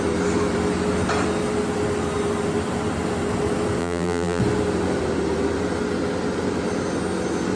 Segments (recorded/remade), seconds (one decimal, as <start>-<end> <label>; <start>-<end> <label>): 0.0-3.8 recorded; 3.8-4.4 remade; 4.4-7.6 recorded